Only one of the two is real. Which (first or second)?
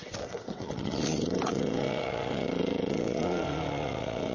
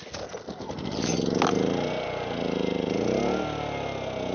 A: second